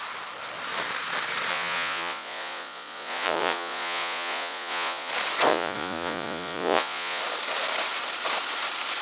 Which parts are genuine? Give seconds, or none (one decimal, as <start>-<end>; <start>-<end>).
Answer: 0.0-1.5; 5.1-5.5; 7.2-9.0